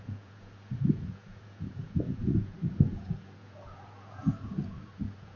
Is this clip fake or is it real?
fake